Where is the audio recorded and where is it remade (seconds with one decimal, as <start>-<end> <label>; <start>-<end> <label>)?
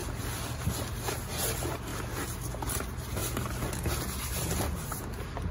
0.0-5.5 recorded